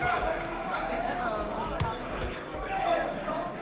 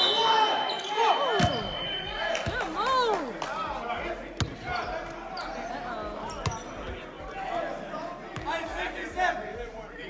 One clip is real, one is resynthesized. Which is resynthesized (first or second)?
first